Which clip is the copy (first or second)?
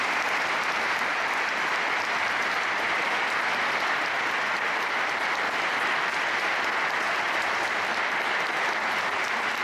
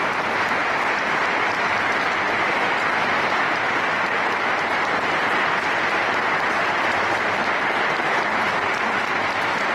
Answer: first